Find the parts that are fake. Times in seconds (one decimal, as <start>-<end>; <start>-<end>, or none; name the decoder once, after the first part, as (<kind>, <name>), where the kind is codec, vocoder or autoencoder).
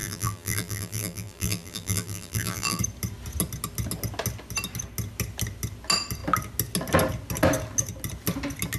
0.0-2.8 (vocoder, BigVGAN v2)